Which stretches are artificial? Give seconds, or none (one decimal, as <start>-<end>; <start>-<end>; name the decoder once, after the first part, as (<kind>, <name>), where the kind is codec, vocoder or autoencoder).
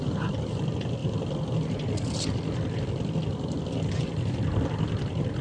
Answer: none